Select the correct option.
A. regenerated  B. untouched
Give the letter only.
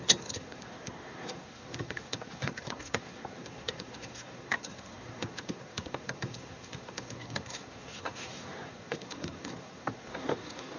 A